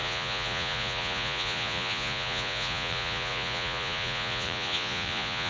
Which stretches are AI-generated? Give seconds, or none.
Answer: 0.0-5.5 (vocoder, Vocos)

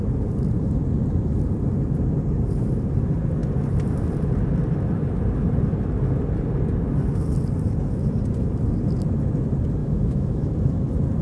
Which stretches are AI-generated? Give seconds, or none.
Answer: 9.8-10.5 (autoencoder, DAC-VAE)

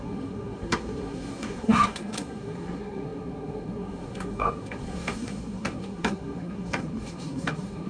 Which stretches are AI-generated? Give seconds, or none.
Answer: 0.0-7.9 (codec, SNAC)

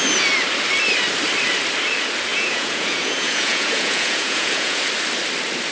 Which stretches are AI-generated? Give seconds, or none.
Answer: 2.3-4.8 (vocoder, Vocos)

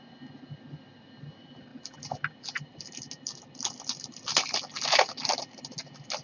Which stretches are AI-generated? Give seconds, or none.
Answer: none

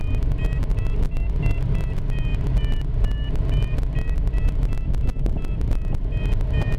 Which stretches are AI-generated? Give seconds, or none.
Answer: none